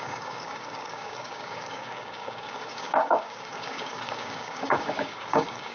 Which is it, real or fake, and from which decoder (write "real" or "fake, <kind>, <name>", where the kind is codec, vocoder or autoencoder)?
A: fake, codec, DAC